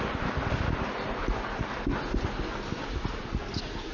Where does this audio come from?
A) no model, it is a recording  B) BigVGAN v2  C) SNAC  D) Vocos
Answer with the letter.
A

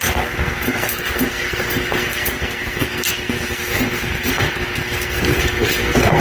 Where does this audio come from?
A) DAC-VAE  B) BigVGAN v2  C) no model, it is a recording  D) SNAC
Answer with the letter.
D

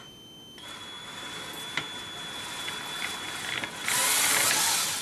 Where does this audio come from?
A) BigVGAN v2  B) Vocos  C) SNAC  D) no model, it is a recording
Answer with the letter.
D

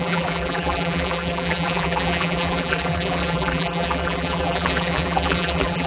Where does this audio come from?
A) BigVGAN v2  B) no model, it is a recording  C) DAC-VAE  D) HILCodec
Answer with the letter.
A